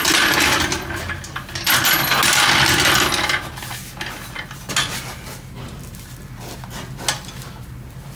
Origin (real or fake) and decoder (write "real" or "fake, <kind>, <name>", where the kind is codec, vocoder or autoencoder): real